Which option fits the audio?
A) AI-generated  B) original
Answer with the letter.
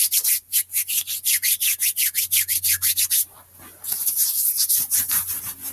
B